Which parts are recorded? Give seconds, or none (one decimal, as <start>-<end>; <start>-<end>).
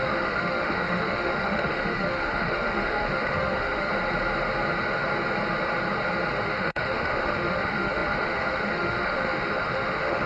3.9-6.4